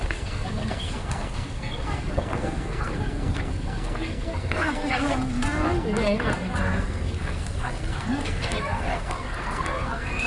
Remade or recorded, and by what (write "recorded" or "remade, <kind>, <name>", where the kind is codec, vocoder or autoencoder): remade, codec, SNAC